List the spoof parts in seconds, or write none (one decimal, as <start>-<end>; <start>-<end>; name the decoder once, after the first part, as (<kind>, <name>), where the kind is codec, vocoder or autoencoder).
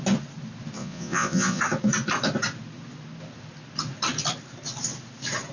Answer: 0.8-1.6 (vocoder, Vocos)